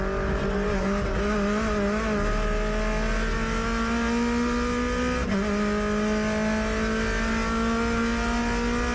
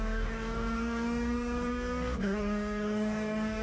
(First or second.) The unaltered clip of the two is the first